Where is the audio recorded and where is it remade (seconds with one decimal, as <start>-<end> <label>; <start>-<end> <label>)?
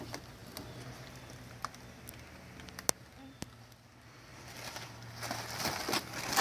0.0-6.4 recorded